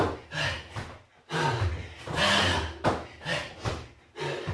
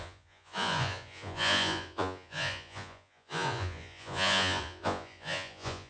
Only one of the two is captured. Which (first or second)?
first